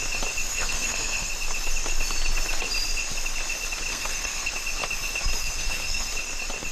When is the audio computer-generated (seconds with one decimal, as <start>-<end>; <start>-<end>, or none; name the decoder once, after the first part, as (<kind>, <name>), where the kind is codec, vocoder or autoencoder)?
0.5-1.3 (codec, SNAC); 3.9-4.5; 5.4-6.1